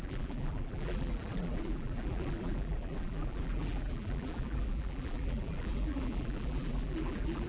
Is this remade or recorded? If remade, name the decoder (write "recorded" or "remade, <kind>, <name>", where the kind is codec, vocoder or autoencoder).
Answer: remade, vocoder, BigVGAN v2